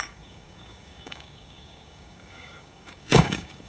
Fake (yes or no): yes